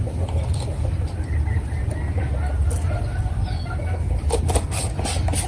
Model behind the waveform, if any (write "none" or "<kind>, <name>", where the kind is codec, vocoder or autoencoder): none